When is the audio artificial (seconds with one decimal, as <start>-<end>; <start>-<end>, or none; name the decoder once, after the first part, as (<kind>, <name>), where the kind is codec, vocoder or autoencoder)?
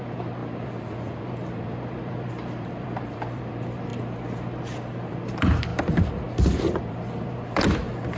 0.0-3.9 (vocoder, BigVGAN v2); 5.1-5.7; 6.6-8.2